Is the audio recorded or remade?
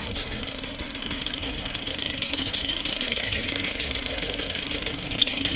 remade